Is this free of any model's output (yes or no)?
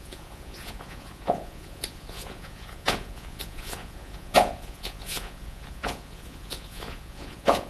no